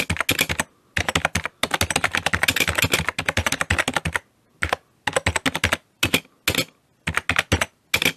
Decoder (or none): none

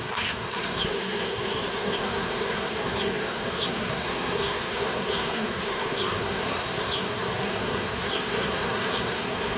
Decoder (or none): codec, SNAC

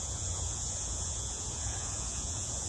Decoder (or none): vocoder, Vocos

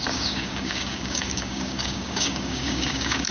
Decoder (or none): codec, DAC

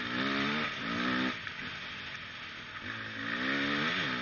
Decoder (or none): none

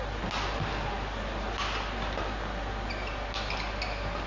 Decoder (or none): none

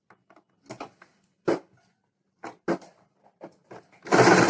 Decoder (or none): none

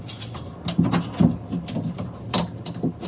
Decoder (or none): none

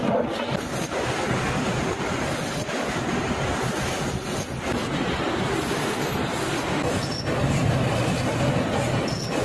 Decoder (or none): none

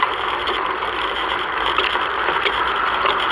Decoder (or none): vocoder, BigVGAN v2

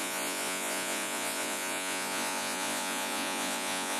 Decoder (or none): vocoder, Vocos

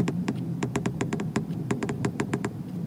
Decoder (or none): vocoder, BigVGAN v2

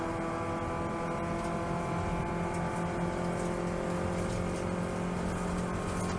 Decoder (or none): none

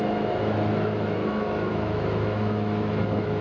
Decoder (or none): autoencoder, DAC-VAE